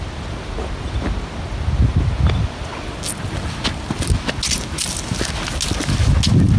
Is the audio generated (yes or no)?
no